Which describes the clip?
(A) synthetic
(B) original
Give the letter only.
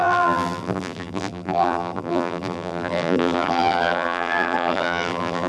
A